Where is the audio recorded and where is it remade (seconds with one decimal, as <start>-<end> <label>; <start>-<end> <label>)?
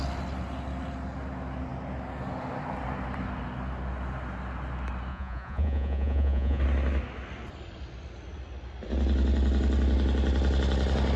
0.0-5.1 recorded; 5.1-6.6 remade; 6.6-11.2 recorded